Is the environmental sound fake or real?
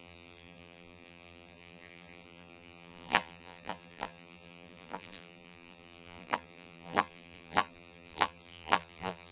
fake